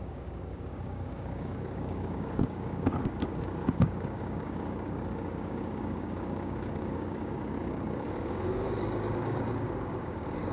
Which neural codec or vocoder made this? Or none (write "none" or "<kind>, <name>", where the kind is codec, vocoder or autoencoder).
codec, DAC